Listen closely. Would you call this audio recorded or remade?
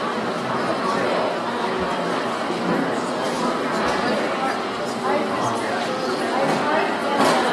recorded